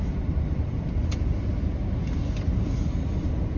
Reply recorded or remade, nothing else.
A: remade